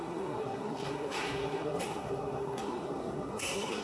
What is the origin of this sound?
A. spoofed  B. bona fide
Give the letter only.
A